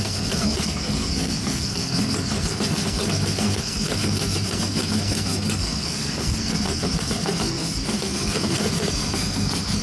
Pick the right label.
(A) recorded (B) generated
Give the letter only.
B